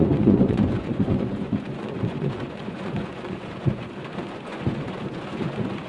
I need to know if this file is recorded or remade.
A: remade